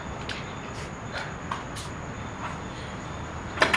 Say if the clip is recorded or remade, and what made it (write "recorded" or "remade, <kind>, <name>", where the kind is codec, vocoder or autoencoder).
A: recorded